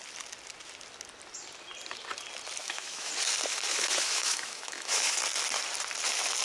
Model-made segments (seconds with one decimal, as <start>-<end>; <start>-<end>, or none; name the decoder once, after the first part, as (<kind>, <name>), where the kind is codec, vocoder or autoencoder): 2.6-3.1 (autoencoder, DAC-VAE); 3.5-5.2